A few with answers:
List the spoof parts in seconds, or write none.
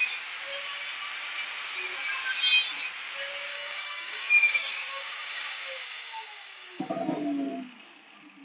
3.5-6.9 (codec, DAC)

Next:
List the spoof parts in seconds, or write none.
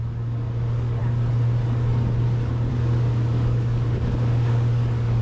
0.0-1.0 (codec, DAC); 2.7-5.2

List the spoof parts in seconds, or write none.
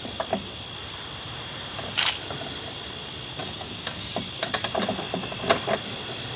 3.4-4.1 (codec, DAC)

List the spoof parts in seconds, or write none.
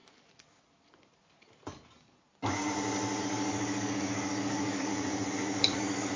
3.2-4.9 (codec, DAC); 5.6-6.2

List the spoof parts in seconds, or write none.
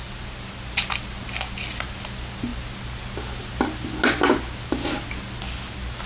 none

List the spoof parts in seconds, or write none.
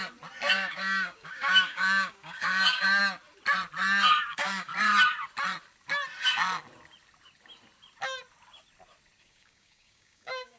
0.5-3.0 (codec, DAC); 4.3-4.7; 9.2-10.6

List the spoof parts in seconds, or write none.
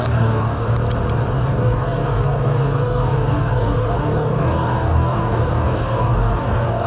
0.0-0.7 (codec, DAC); 1.3-6.9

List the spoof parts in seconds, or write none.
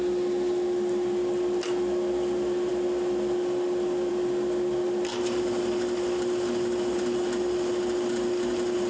none